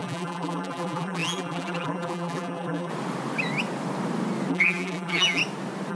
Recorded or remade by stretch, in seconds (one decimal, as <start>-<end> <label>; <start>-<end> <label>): 0.0-2.9 remade; 2.9-4.5 recorded; 4.5-5.4 remade; 5.4-5.9 recorded